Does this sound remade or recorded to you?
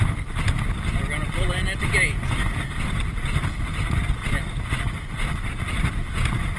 recorded